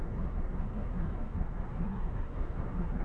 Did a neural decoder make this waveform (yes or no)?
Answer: yes